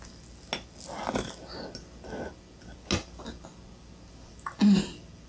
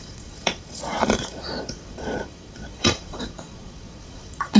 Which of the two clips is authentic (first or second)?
first